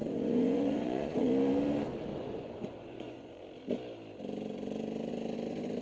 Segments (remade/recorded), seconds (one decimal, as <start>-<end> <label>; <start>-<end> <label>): 0.0-1.3 remade; 1.3-2.1 recorded; 2.1-3.4 remade; 3.4-5.8 recorded